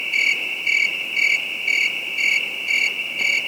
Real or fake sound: real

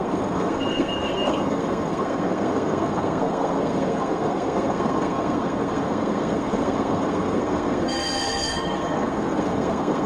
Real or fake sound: fake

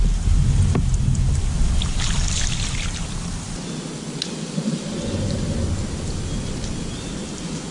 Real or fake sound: real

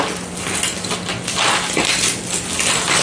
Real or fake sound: real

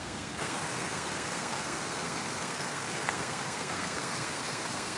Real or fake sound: fake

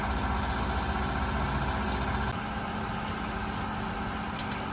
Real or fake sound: real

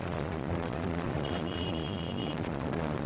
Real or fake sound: fake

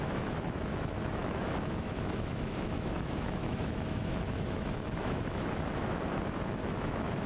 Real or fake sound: fake